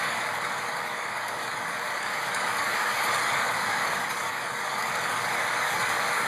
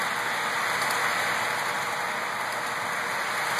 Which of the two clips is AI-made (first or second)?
first